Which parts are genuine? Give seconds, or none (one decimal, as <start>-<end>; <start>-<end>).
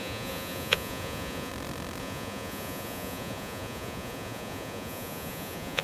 1.5-2.0